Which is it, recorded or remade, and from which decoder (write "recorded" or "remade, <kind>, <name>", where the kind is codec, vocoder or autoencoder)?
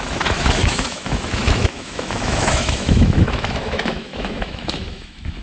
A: remade, autoencoder, DAC-VAE